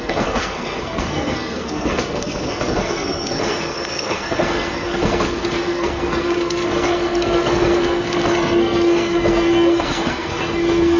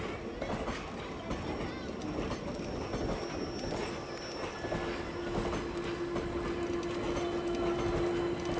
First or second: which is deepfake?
first